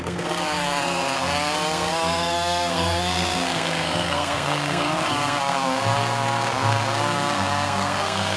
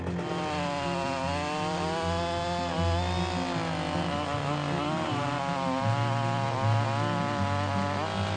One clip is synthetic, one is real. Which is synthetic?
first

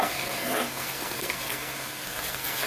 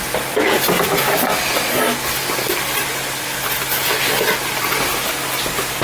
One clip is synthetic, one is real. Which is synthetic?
first